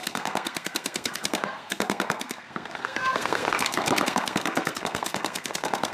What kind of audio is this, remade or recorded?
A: remade